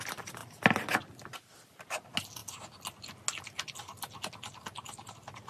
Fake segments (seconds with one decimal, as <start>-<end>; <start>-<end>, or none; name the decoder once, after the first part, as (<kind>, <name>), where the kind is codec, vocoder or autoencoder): none